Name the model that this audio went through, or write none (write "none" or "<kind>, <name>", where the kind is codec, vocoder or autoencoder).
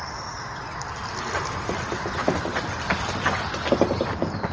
none